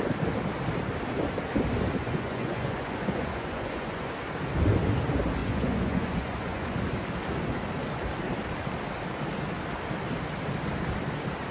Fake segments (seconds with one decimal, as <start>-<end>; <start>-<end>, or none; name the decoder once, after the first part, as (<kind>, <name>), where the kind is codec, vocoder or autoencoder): 2.0-4.1 (vocoder, Vocos); 5.4-6.8